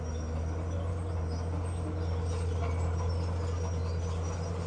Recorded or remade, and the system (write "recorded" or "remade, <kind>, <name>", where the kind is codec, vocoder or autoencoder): recorded